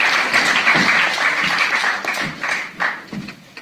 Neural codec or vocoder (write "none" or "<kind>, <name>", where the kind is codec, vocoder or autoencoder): none